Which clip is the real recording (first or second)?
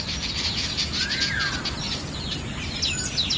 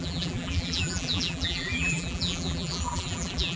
first